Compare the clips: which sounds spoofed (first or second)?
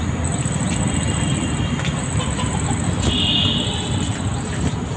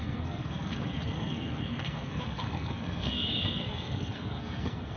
second